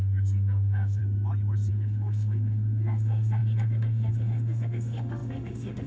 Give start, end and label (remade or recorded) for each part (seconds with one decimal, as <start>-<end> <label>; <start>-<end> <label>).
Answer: 0.0-1.0 remade; 1.0-1.7 recorded; 1.7-5.9 remade